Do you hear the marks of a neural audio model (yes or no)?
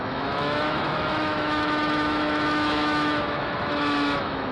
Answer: yes